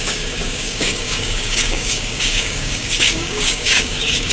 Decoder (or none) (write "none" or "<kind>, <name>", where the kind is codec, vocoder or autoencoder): codec, DAC